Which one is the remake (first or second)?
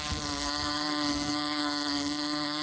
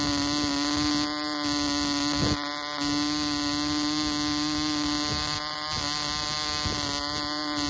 first